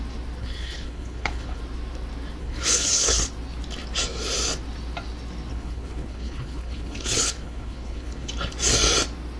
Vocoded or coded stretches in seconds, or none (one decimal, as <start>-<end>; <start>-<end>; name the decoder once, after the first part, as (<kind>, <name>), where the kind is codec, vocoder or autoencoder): 0.4-1.6 (codec, HILCodec); 2.4-3.2; 5.5-8.3